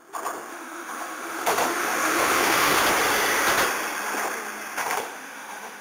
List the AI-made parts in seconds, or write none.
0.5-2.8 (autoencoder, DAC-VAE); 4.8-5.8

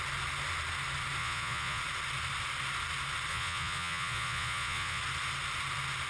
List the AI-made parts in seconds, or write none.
1.2-1.8 (vocoder, Vocos); 3.3-5.0